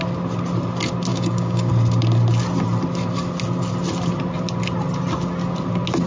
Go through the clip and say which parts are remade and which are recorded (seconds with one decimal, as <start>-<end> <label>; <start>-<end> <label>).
0.0-1.1 recorded; 1.1-1.7 remade; 1.7-6.1 recorded